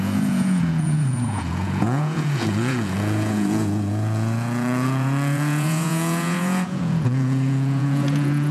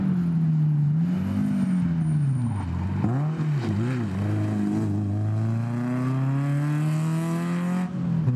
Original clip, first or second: second